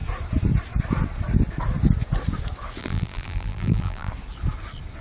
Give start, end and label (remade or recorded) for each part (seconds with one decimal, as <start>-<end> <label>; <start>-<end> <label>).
0.0-2.8 recorded; 2.8-4.1 remade; 4.1-5.0 recorded